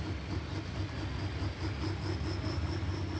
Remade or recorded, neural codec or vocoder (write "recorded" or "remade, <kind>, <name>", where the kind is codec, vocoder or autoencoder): recorded